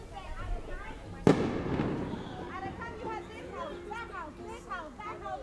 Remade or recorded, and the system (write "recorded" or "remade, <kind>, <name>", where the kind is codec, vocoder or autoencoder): recorded